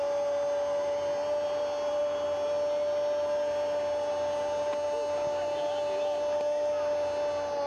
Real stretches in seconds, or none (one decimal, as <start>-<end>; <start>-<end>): 0.0-7.7